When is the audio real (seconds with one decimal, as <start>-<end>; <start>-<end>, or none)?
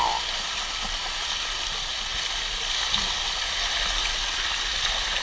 0.0-5.2